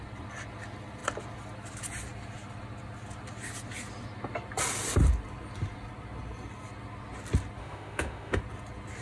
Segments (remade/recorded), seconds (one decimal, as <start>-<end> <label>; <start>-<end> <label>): 0.0-7.6 recorded; 7.6-8.4 remade; 8.4-9.0 recorded